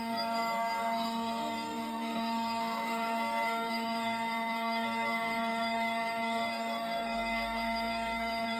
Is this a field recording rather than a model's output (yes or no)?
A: no